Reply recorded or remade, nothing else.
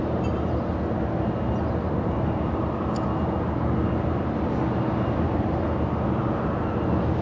recorded